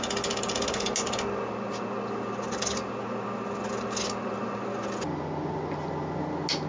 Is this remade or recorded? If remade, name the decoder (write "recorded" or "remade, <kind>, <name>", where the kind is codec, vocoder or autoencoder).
recorded